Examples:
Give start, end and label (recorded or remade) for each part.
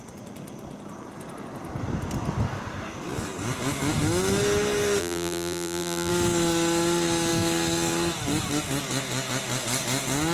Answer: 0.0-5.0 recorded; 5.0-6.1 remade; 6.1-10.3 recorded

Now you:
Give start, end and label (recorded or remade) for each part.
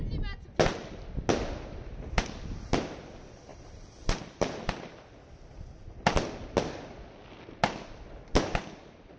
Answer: 0.0-3.5 recorded; 3.5-4.7 remade; 4.7-9.2 recorded